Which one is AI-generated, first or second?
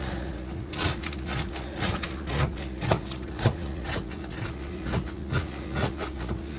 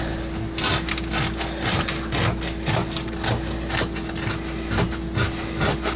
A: first